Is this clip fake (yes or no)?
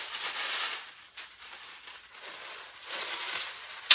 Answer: no